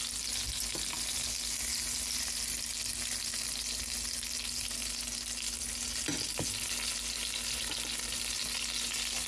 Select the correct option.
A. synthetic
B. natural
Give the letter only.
B